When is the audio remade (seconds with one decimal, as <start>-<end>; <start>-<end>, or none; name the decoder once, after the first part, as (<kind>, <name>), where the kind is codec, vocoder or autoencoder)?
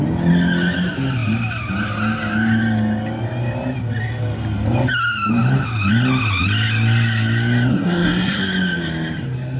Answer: 7.7-8.4 (codec, SNAC)